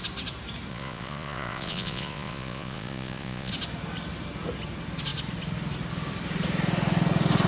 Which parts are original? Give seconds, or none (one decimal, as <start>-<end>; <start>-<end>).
0.0-0.7; 3.5-7.5